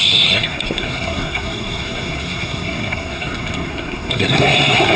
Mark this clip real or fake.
fake